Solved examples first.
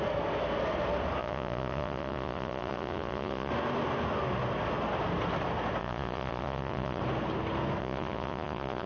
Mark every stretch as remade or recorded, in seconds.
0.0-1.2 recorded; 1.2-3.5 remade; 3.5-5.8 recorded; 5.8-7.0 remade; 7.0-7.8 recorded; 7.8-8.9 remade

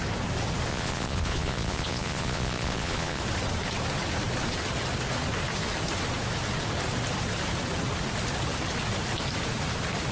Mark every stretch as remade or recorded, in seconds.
0.0-0.7 recorded; 0.7-3.2 remade; 3.2-10.1 recorded

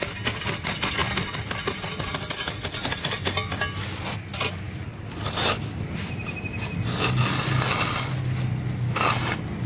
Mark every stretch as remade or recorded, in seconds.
0.0-9.7 recorded